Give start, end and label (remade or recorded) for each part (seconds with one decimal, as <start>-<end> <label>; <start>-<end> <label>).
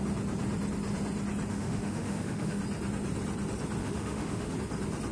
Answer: 0.0-1.5 recorded; 1.5-2.6 remade; 2.6-3.8 recorded; 3.8-4.5 remade; 4.5-5.1 recorded